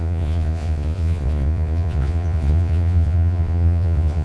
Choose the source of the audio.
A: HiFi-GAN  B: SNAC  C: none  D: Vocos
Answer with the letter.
D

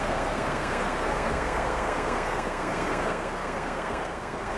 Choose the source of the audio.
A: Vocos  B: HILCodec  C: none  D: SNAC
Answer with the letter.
D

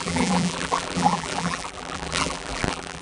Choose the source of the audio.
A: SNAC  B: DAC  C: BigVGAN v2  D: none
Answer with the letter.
C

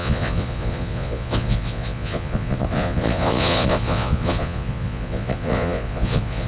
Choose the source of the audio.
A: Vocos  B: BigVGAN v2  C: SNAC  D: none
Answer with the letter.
A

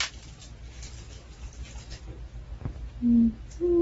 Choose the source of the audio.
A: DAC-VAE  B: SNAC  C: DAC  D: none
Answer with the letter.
D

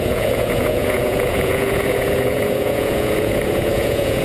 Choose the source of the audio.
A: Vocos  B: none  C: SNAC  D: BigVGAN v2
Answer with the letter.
A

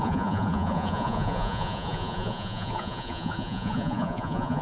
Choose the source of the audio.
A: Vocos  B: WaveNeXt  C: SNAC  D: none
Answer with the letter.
A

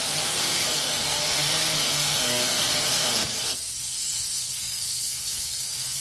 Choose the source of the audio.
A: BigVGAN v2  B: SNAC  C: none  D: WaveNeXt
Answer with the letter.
B